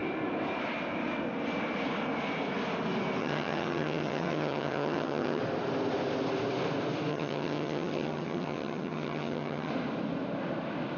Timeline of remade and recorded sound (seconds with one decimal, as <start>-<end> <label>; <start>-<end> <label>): 0.0-3.2 recorded; 3.2-5.4 remade; 5.4-7.1 recorded; 7.1-9.7 remade; 9.7-11.0 recorded

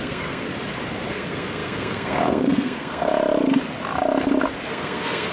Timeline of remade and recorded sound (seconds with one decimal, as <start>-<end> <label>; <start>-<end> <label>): 0.0-0.5 remade; 0.5-1.1 recorded; 1.1-3.1 remade; 3.1-4.7 recorded; 4.7-5.3 remade

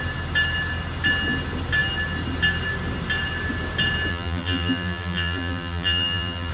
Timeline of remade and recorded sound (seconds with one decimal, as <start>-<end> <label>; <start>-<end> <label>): 0.0-4.1 recorded; 4.1-6.5 remade

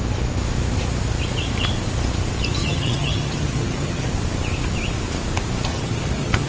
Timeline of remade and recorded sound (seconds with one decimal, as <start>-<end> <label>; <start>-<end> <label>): 0.0-2.6 recorded; 2.6-4.1 remade; 4.1-5.7 recorded; 5.7-6.5 remade

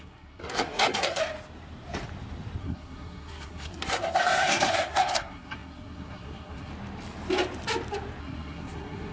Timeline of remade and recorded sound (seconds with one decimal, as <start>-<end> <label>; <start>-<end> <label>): 0.0-1.2 remade; 1.2-2.6 recorded; 2.6-6.7 remade; 6.7-8.2 recorded; 8.2-9.1 remade

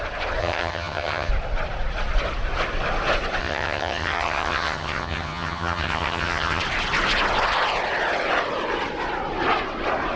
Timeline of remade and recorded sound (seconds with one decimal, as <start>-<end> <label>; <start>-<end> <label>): 0.0-0.4 recorded; 0.4-1.3 remade; 1.3-3.4 recorded; 3.4-6.6 remade; 6.6-10.2 recorded

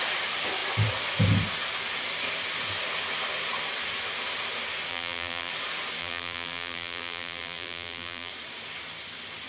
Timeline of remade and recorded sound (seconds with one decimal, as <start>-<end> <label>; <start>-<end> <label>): 0.0-4.9 recorded; 4.9-5.5 remade; 5.5-6.0 recorded; 6.0-8.3 remade; 8.3-9.5 recorded

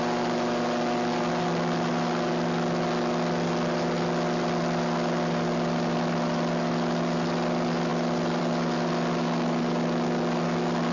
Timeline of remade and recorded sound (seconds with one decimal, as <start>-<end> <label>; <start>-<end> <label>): 0.0-10.9 recorded